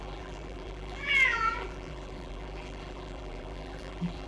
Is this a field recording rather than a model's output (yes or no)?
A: no